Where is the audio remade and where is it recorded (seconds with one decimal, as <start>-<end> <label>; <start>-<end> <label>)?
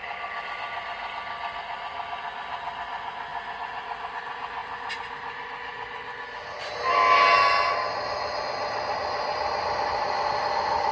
0.0-0.6 remade; 0.6-10.9 recorded